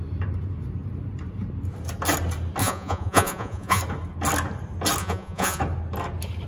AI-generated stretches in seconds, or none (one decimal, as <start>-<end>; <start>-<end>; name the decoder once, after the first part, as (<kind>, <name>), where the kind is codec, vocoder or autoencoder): 2.6-3.8 (vocoder, Vocos); 5.0-5.6

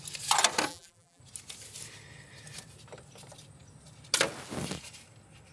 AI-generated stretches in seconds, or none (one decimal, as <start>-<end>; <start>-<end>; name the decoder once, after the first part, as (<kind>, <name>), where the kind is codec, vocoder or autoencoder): 0.7-1.2 (vocoder, BigVGAN v2)

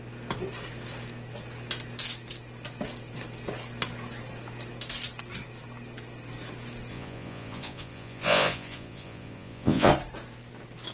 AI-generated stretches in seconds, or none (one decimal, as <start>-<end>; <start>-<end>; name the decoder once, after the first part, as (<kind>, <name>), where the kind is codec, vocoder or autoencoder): 6.9-9.9 (vocoder, Vocos)

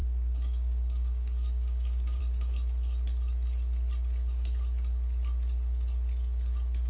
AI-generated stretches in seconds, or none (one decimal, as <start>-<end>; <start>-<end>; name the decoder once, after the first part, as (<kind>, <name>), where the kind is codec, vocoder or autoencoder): 0.0-2.2 (codec, DAC)